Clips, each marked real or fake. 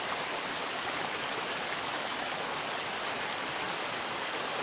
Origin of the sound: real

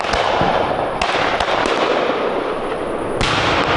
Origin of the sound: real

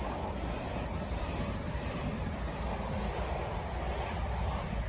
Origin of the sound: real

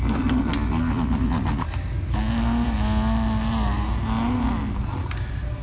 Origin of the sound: real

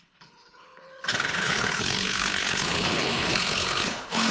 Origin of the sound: fake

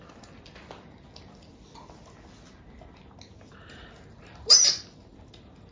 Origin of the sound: real